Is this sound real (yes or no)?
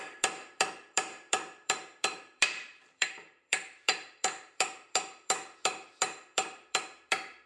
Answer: no